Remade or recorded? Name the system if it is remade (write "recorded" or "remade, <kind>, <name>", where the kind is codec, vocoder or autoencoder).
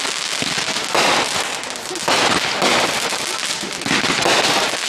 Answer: recorded